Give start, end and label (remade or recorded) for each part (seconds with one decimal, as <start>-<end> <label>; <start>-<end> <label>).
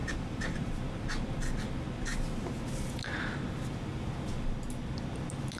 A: 0.0-0.7 remade; 0.7-2.1 recorded; 2.1-2.7 remade; 2.7-5.6 recorded